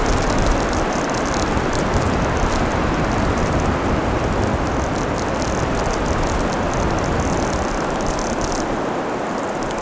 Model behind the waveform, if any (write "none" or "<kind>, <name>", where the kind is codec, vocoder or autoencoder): none